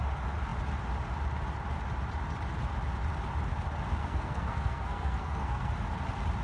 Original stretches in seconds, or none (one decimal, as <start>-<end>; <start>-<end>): 0.0-4.0; 5.7-6.4